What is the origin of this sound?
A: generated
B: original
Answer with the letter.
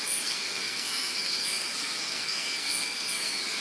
A